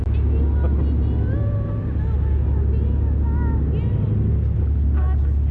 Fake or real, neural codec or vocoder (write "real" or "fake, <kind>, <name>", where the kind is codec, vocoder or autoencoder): real